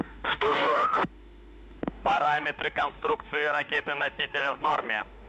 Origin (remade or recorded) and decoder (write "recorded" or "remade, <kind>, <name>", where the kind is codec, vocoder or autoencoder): remade, autoencoder, DAC-VAE